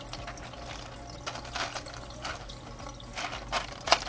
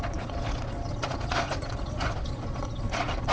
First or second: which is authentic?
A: first